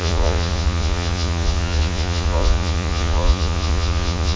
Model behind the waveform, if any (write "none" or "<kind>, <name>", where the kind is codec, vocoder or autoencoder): vocoder, Vocos